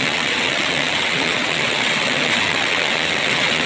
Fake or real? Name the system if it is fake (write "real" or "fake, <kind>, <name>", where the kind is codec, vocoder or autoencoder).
fake, vocoder, WaveNeXt